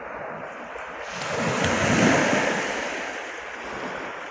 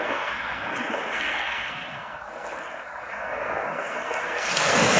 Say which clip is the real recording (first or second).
first